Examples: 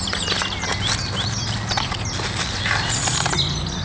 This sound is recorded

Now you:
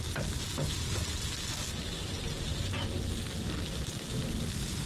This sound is recorded